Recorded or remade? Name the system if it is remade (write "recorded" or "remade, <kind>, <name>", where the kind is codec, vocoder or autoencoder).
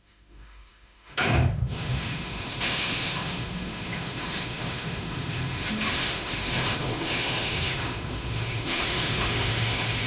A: remade, autoencoder, DAC-VAE